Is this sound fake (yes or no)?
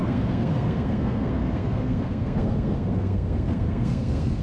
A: yes